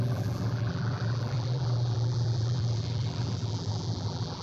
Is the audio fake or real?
fake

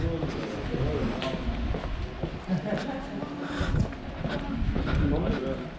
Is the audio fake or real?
real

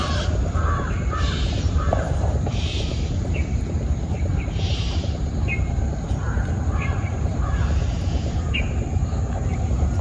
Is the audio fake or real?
fake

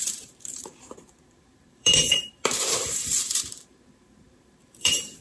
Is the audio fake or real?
fake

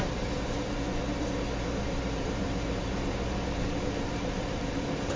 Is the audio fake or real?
fake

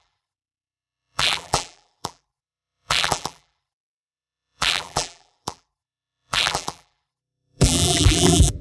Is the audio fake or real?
fake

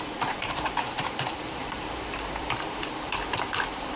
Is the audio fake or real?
fake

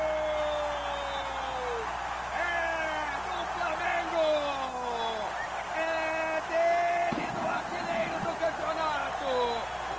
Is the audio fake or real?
real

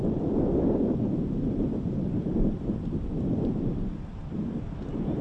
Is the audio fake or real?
fake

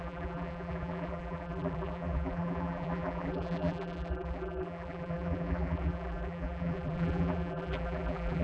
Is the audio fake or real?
fake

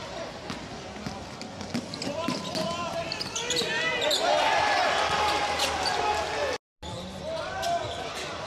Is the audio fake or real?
real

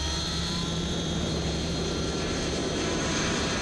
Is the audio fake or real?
fake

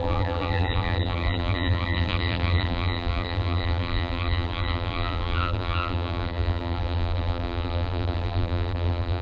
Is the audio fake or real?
fake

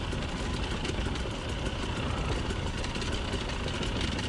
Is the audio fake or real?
real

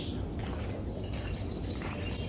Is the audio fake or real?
real